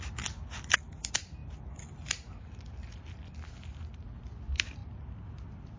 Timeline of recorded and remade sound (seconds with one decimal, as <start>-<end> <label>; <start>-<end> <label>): 0.0-5.8 recorded